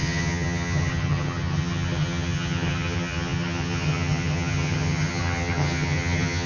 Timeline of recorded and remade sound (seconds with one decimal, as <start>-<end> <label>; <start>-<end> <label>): 0.0-6.5 remade